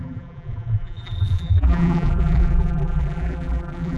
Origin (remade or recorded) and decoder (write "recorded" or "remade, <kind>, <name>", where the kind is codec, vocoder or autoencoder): remade, vocoder, BigVGAN v2